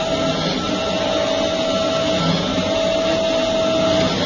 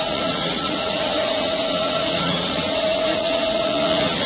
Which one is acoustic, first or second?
first